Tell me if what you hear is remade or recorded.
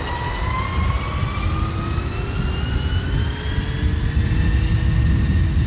recorded